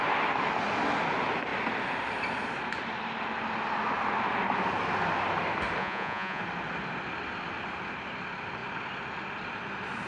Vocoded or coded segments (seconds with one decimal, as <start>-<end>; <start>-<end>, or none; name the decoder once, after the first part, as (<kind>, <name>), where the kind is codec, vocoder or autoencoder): 5.8-6.4 (vocoder, Vocos)